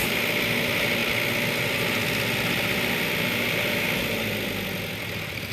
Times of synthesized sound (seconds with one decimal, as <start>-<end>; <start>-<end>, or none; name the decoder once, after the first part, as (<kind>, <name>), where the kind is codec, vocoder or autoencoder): none